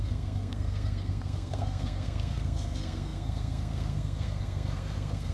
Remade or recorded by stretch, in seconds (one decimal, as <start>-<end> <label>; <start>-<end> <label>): 0.0-5.3 remade